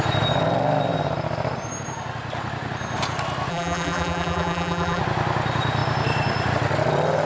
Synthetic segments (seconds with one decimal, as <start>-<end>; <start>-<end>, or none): 3.5-5.0